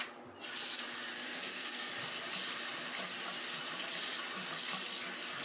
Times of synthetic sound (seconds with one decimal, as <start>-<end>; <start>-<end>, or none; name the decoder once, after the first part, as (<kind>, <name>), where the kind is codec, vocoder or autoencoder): 1.1-1.9 (codec, SNAC)